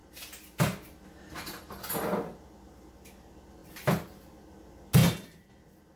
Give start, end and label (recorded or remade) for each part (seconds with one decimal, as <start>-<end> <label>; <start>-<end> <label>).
0.0-5.0 recorded; 5.0-5.5 remade; 5.5-6.0 recorded